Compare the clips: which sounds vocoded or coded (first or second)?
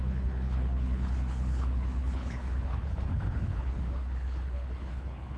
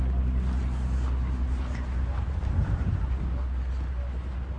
first